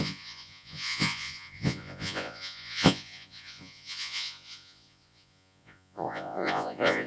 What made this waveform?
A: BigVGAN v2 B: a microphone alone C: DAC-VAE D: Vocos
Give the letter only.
D